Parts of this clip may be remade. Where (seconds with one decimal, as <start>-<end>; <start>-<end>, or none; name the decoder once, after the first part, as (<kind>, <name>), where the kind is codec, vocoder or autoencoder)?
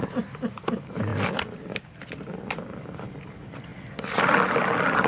none